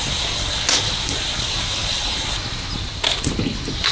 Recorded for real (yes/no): yes